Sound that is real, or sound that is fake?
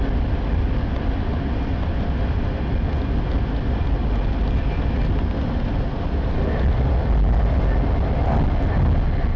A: real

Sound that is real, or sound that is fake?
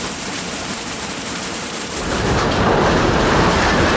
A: fake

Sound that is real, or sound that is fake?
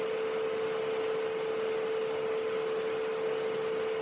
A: real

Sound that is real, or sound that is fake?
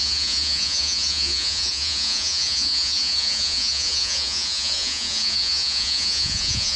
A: fake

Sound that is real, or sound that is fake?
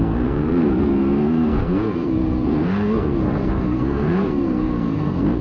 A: fake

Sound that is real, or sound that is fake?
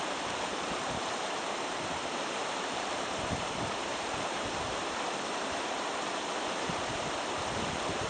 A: fake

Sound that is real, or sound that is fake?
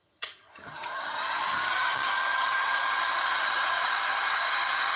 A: fake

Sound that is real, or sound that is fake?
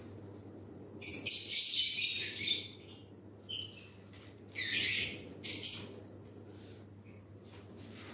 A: fake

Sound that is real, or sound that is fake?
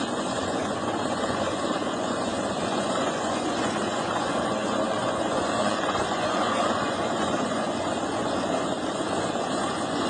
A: fake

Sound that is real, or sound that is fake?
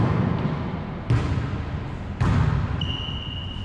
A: real